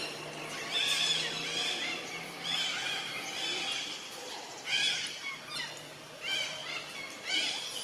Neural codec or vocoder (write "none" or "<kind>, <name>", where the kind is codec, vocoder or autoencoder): none